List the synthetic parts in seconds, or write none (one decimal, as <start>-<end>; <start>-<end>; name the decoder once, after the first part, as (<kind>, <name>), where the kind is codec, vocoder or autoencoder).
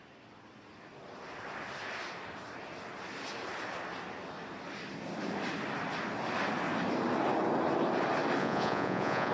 8.4-9.3 (vocoder, Vocos)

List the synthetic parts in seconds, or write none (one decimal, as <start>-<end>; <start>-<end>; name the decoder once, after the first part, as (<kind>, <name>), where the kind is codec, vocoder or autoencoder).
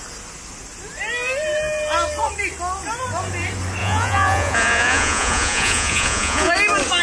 3.8-6.5 (vocoder, Vocos)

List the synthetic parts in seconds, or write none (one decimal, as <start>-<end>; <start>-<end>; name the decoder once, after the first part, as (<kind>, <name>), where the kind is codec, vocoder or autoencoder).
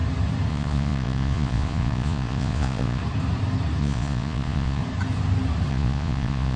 0.5-3.0 (vocoder, Vocos); 3.8-4.8; 5.7-6.6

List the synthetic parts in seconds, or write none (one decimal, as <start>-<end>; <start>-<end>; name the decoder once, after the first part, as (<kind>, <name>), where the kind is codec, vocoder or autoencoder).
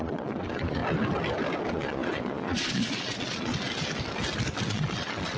0.0-0.8 (vocoder, Vocos); 1.7-3.5; 4.6-5.4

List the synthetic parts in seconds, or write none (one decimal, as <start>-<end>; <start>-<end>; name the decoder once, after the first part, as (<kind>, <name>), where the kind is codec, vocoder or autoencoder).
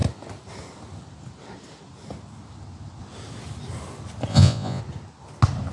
4.3-4.8 (vocoder, Vocos)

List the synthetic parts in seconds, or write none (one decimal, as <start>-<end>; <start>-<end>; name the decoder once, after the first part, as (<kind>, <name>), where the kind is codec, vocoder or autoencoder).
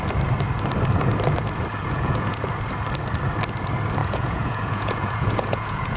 1.8-2.4 (vocoder, Vocos); 4.0-6.0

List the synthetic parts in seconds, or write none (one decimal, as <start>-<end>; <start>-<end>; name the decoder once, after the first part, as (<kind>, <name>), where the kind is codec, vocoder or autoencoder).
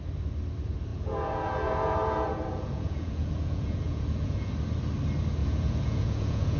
0.9-4.5 (vocoder, Vocos); 5.4-6.6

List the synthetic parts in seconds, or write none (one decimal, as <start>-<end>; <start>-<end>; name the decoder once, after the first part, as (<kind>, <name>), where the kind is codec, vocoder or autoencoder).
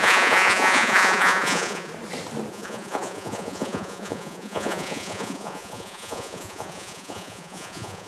0.0-1.9 (vocoder, Vocos); 2.5-8.1